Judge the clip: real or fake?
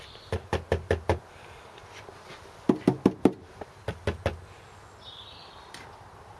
real